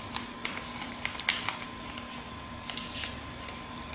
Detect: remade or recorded recorded